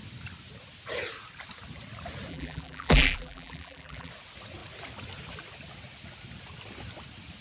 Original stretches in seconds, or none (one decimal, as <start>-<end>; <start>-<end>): 0.0-2.3; 4.1-7.4